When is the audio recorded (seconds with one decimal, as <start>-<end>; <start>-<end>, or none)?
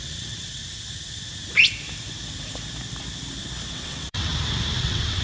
0.6-3.7; 4.3-4.8